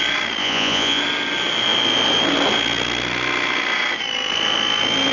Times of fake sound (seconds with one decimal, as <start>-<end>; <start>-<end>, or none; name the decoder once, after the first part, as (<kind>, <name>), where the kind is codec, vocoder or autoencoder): 0.4-1.0 (vocoder, Vocos)